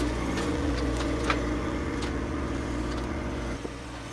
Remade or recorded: remade